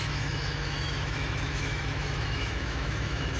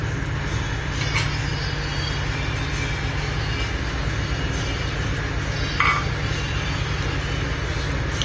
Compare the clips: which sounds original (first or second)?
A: second